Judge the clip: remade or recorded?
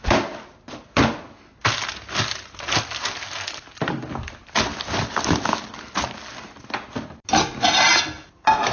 recorded